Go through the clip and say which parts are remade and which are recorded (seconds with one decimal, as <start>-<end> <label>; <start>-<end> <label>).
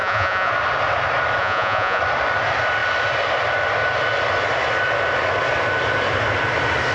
0.0-0.5 remade; 0.5-1.4 recorded; 1.4-2.0 remade; 2.0-6.9 recorded